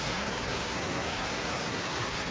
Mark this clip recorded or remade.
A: remade